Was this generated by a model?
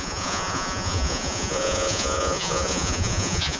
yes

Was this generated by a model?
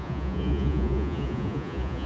yes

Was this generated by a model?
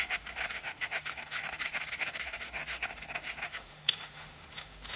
yes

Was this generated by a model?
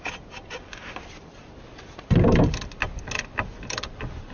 no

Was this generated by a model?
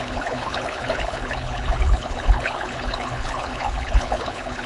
yes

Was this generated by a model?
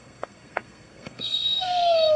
yes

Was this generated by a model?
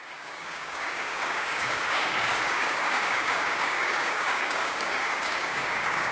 yes